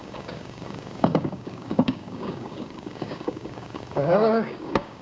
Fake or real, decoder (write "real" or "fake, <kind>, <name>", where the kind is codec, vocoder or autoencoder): fake, codec, DAC